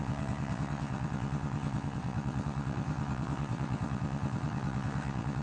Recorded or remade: remade